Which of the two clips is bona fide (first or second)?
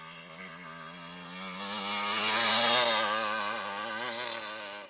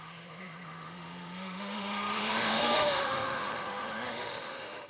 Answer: first